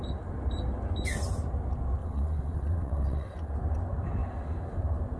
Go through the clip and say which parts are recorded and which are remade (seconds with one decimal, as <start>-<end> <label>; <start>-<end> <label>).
0.0-2.0 recorded; 2.0-3.5 remade; 3.5-5.2 recorded